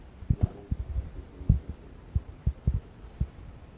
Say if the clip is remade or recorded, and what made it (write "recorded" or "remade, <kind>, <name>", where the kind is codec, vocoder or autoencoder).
recorded